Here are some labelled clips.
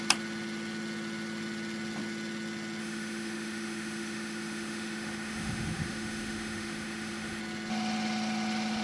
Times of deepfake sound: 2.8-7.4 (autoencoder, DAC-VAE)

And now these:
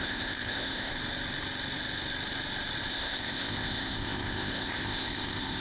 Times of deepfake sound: 0.0-0.9 (codec, ZipCodec); 2.9-5.6

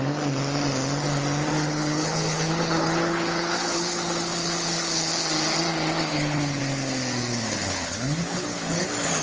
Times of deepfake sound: 1.5-5.0 (codec, HILCodec); 6.1-6.6; 7.3-9.2

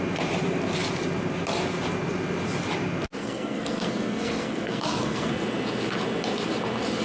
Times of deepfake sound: 3.2-5.3 (codec, SNAC)

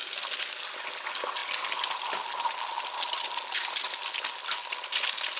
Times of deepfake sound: none